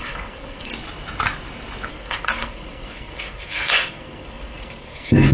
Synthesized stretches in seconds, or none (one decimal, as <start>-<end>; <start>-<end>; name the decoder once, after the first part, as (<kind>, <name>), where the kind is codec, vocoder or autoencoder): 0.0-0.7 (codec, SNAC); 1.9-5.3